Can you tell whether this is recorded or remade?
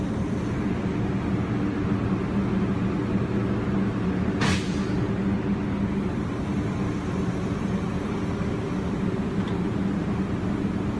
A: recorded